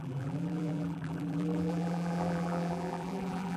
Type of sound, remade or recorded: remade